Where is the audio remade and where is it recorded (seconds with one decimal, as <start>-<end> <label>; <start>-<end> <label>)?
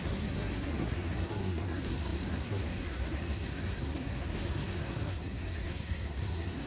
0.0-6.7 remade